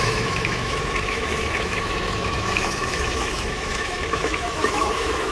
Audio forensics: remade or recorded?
remade